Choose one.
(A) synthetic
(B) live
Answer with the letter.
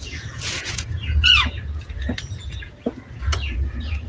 A